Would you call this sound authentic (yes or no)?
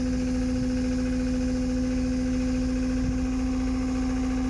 yes